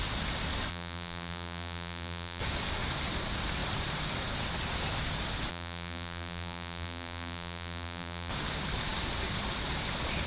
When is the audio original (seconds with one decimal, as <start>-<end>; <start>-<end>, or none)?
0.0-0.7; 2.4-5.5; 8.3-10.3